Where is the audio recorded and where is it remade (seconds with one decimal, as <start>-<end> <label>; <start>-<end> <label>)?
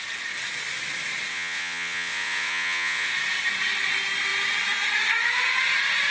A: 0.0-1.3 recorded; 1.3-3.1 remade; 3.1-6.1 recorded